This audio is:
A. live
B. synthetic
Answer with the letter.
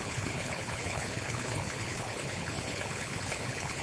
B